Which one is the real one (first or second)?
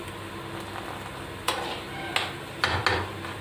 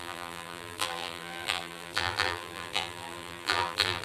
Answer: first